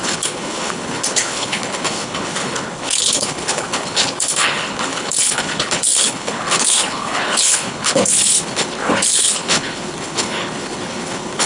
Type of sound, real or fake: fake